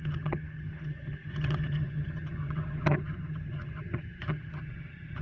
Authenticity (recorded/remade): remade